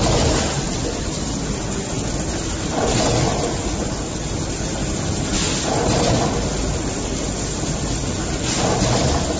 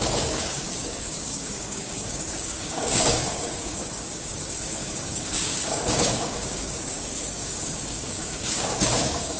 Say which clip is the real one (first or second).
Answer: first